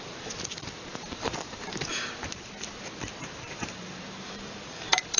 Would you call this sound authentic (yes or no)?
no